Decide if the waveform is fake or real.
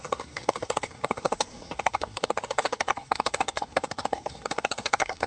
fake